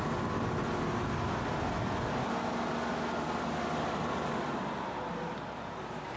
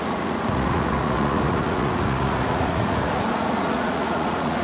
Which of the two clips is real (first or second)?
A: first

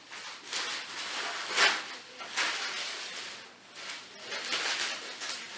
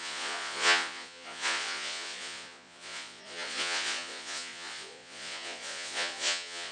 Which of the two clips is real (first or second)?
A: first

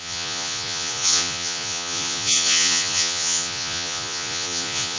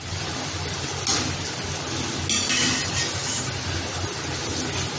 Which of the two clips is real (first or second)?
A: second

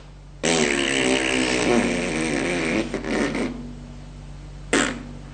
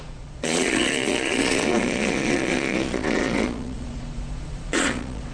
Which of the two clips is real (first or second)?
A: first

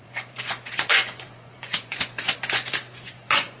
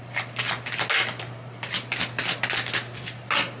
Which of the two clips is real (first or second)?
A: second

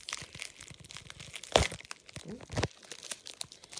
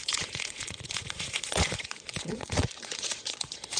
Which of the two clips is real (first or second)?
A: first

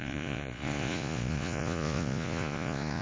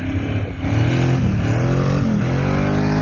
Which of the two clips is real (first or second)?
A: second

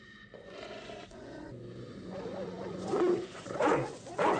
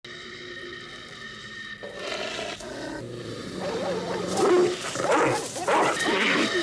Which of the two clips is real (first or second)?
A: second